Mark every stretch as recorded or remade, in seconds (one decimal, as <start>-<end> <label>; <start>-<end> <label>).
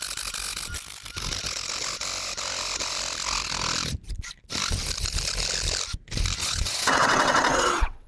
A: 0.0-6.4 recorded; 6.4-8.1 remade